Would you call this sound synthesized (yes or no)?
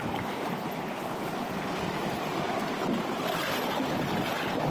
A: no